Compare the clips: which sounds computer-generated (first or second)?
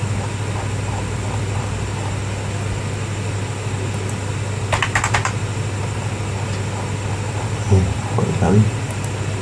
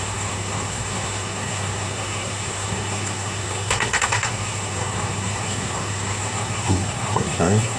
second